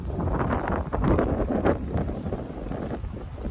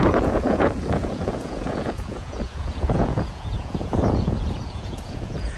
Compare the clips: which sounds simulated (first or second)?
second